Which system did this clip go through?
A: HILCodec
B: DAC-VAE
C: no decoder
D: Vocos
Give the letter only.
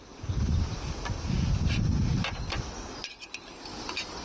C